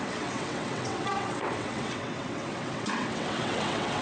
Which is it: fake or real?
fake